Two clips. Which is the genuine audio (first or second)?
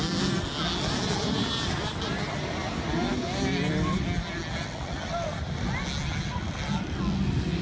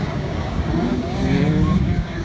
first